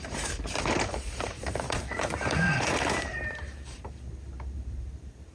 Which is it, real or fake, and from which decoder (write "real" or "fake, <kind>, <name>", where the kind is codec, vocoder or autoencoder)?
fake, vocoder, BigVGAN v2